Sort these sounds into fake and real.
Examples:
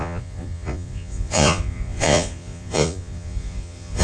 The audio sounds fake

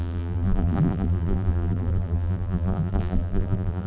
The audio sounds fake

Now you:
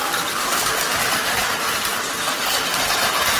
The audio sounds real